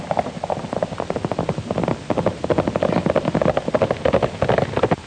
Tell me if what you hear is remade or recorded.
recorded